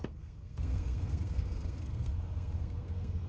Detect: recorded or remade remade